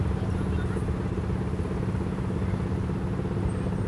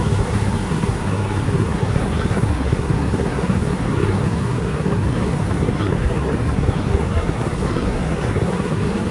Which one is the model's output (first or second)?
second